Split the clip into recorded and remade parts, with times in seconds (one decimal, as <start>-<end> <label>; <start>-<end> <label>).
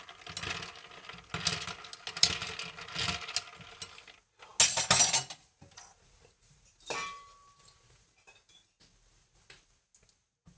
0.0-10.6 recorded